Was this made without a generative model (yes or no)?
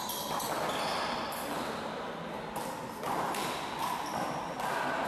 yes